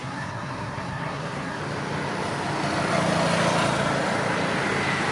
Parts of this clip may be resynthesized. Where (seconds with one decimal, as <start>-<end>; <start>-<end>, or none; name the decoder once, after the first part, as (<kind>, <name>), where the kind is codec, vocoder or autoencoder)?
0.0-1.6 (codec, SNAC)

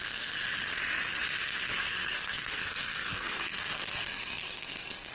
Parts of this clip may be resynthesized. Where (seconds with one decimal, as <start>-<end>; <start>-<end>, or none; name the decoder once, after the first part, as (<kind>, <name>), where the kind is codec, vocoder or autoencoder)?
1.7-5.1 (codec, SNAC)